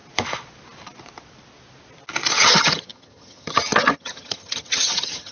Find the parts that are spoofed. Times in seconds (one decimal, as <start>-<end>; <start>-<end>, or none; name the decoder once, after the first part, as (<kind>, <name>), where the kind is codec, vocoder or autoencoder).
2.3-5.3 (vocoder, HiFi-GAN)